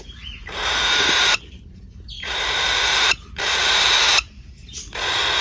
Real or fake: fake